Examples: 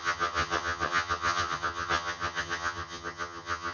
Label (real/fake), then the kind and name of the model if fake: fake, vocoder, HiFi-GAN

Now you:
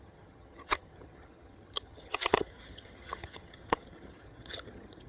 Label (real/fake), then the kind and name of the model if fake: fake, vocoder, HiFi-GAN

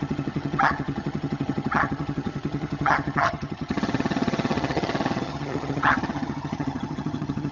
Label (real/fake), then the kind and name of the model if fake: fake, vocoder, HiFi-GAN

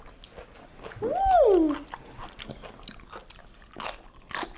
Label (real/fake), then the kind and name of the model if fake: real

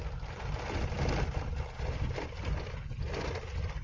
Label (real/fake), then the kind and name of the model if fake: real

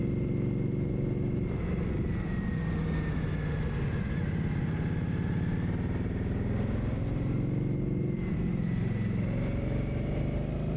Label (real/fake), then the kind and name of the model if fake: real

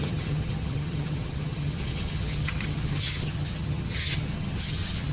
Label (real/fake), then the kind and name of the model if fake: fake, vocoder, HiFi-GAN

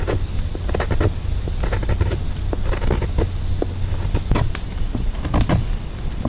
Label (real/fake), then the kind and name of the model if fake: real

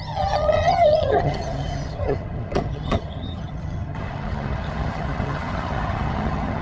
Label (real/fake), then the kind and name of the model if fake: fake, vocoder, HiFi-GAN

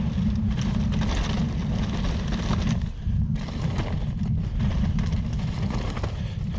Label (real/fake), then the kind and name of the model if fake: real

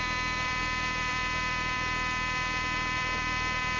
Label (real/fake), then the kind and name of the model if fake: real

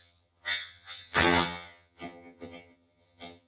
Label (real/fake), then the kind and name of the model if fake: fake, vocoder, HiFi-GAN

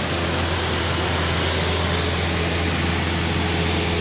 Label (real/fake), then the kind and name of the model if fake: real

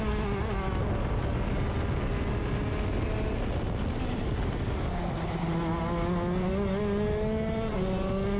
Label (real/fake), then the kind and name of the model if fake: real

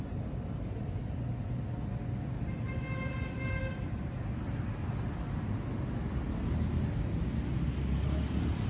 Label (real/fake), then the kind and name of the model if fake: real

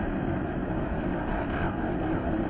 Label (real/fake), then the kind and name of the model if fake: real